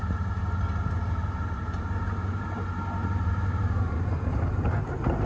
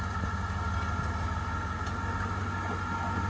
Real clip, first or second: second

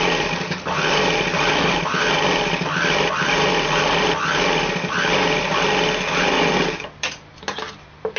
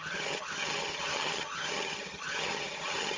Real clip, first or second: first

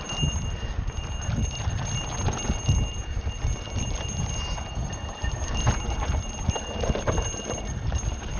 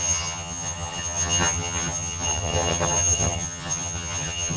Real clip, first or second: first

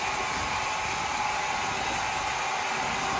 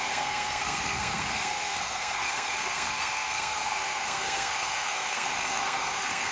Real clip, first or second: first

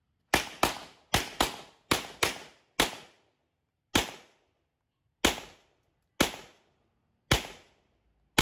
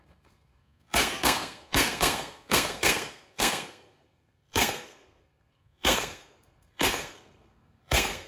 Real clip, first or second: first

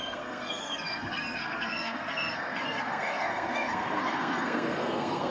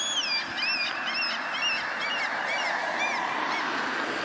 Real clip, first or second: second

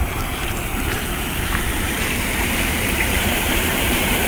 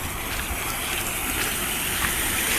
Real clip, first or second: second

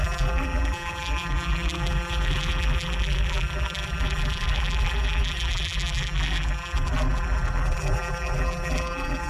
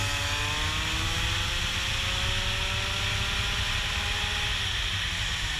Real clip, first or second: second